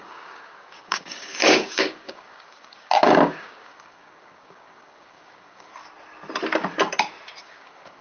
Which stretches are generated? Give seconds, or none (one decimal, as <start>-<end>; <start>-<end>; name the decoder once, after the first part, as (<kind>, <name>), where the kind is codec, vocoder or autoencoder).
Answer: 0.0-5.7 (codec, DAC); 7.4-8.0